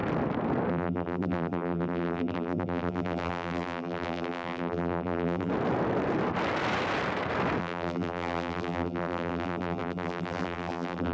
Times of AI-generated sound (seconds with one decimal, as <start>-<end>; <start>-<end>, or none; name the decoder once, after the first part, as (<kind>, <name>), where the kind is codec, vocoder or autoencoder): 0.7-5.5 (vocoder, BigVGAN v2); 7.6-11.1